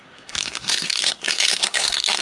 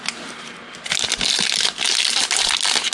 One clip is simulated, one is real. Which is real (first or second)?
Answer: second